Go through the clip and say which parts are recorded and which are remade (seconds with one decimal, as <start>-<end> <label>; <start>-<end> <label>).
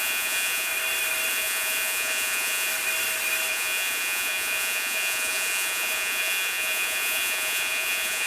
0.0-0.7 remade; 0.7-1.3 recorded; 1.3-2.7 remade; 2.7-3.5 recorded; 3.5-8.3 remade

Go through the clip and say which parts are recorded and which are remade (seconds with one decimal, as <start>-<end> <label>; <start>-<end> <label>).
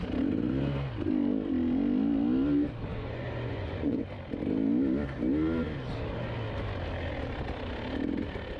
0.0-2.9 recorded; 2.9-4.0 remade; 4.0-8.6 recorded